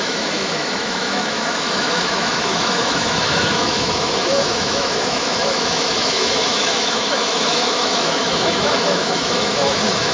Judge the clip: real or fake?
fake